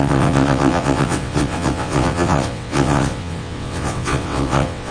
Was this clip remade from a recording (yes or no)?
yes